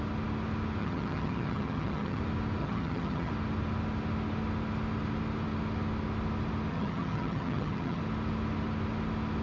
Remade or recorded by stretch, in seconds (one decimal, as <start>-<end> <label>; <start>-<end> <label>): 0.0-0.8 recorded; 0.8-2.2 remade; 2.2-2.6 recorded; 2.6-3.3 remade; 3.3-6.7 recorded; 6.7-8.0 remade; 8.0-9.4 recorded